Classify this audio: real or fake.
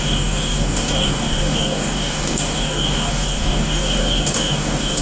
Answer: fake